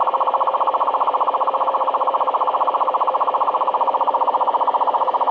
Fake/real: real